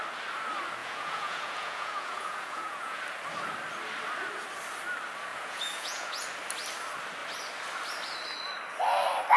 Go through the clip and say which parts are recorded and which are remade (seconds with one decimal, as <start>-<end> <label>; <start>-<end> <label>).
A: 0.0-0.8 recorded; 0.8-3.0 remade; 3.0-5.3 recorded; 5.3-6.2 remade; 6.2-9.4 recorded